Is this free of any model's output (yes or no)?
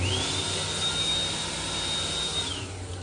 yes